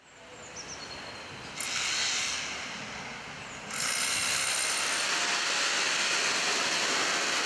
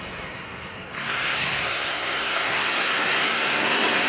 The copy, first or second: second